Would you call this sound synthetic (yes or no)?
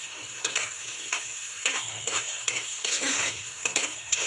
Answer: yes